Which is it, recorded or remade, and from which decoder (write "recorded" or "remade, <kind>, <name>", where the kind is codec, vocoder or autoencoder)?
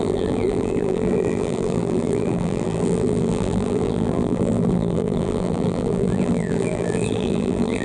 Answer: remade, vocoder, BigVGAN v2